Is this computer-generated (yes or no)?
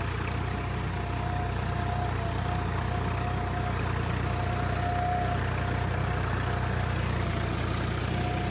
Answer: no